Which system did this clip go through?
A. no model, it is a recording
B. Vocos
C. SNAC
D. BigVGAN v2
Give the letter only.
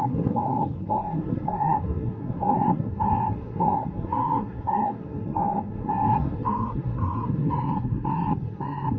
C